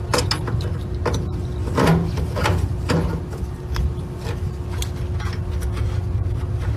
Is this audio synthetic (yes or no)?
no